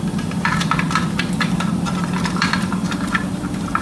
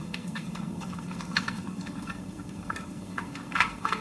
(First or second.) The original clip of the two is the first